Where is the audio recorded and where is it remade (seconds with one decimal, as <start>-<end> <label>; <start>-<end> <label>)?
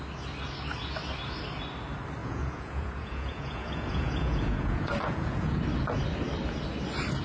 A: 0.0-2.2 recorded; 2.2-5.6 remade; 5.6-7.2 recorded